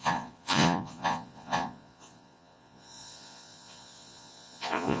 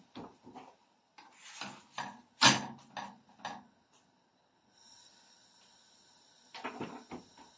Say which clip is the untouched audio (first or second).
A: second